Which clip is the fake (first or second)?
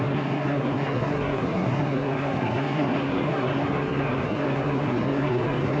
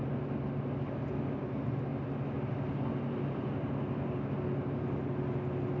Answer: first